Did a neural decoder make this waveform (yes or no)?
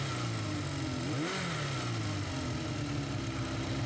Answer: no